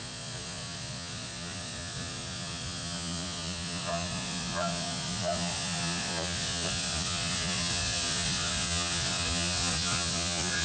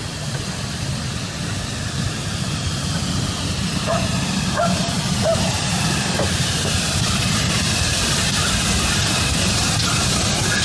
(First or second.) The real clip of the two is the second